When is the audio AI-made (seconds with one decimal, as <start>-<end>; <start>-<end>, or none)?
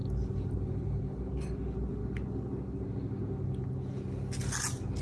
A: 0.0-1.0